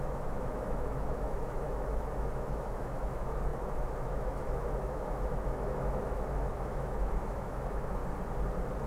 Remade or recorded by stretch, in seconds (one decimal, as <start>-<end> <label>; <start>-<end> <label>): 0.0-8.0 remade; 8.0-8.9 recorded